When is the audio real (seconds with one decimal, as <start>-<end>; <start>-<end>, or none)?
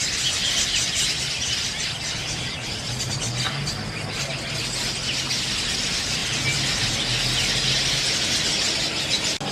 0.0-9.5